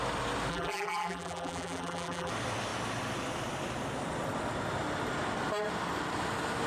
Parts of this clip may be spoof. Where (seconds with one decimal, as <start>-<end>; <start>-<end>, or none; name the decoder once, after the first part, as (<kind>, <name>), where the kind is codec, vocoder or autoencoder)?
0.5-2.3 (vocoder, BigVGAN v2)